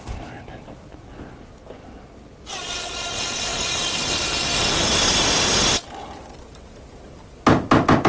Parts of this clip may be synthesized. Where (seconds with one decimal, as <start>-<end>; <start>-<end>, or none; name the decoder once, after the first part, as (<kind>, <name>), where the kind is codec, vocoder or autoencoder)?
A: none